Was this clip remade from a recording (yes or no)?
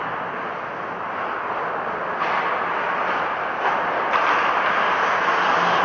no